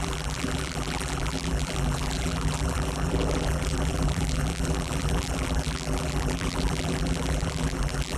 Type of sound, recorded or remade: remade